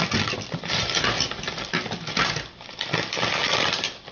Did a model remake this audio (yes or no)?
no